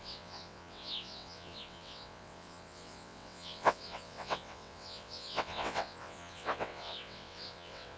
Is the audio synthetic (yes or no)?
yes